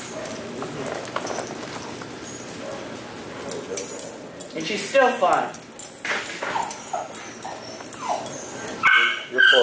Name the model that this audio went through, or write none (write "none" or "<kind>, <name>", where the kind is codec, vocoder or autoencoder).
none